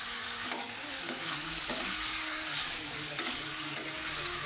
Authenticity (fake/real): fake